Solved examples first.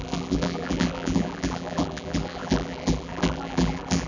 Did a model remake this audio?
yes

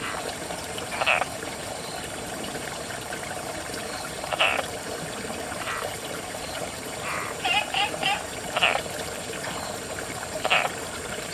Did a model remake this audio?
yes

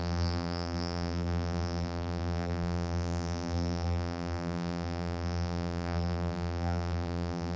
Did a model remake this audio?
yes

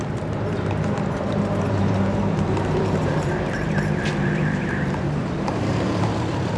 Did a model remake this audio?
yes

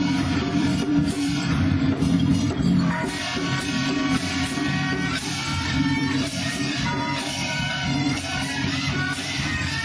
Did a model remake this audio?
yes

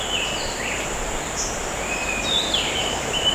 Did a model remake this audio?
yes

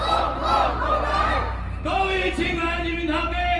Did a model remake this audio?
yes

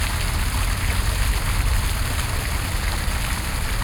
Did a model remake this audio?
no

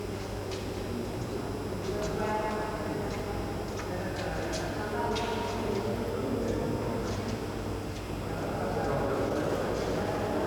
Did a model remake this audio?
no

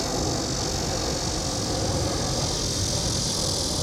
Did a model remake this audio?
no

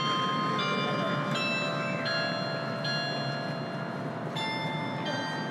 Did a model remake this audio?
no